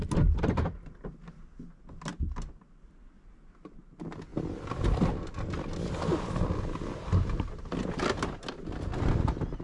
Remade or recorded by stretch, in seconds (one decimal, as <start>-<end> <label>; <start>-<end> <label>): 0.0-9.6 recorded

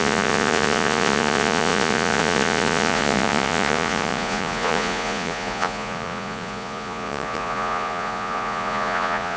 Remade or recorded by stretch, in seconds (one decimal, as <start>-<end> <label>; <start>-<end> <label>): 0.0-9.4 remade